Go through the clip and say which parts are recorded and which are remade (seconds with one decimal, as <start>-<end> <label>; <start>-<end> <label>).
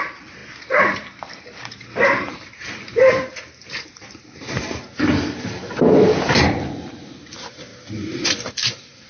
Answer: 0.0-7.7 remade; 7.7-8.5 recorded; 8.5-9.1 remade